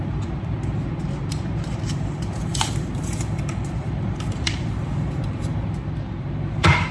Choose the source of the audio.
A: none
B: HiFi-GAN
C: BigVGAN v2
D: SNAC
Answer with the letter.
C